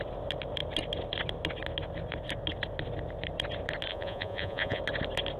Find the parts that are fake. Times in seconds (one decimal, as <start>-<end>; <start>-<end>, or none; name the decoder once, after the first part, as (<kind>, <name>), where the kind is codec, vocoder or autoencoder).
3.9-4.8 (vocoder, Vocos)